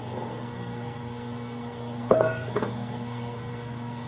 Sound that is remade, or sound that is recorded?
remade